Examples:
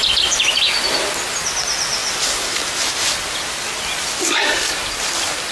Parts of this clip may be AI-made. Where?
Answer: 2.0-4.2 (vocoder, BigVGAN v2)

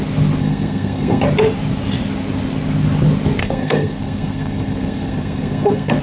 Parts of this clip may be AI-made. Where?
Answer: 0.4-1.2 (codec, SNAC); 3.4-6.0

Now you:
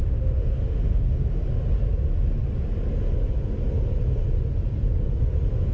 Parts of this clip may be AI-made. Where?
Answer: 0.0-1.4 (autoencoder, DAC-VAE)

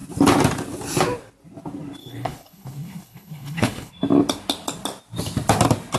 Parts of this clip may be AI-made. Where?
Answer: 2.0-3.9 (codec, HILCodec)